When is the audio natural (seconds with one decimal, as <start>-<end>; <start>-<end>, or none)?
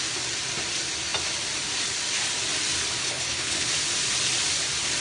0.0-3.0; 3.7-5.0